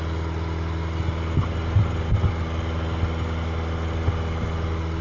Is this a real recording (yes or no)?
yes